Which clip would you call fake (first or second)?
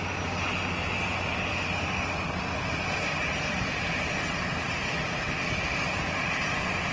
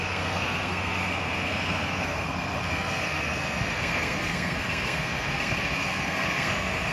second